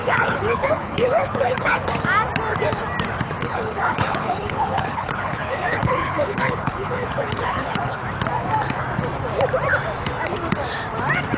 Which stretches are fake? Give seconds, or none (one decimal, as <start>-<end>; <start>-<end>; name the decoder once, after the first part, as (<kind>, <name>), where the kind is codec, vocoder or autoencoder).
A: 0.0-1.8 (codec, HILCodec); 3.4-8.0